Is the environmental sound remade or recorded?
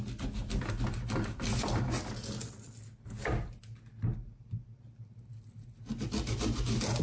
recorded